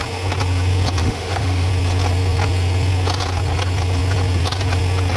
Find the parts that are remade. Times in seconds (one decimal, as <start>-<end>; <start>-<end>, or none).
1.0-1.7